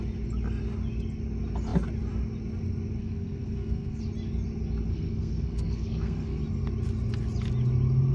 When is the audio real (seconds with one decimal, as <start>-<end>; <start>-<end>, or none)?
0.0-3.0; 4.0-4.9; 6.4-8.1